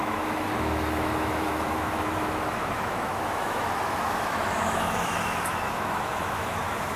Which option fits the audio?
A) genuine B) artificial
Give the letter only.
B